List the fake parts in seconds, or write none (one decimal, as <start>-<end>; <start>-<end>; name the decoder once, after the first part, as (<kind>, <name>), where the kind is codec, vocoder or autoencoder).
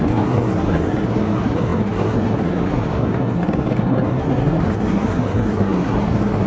0.0-6.5 (codec, SNAC)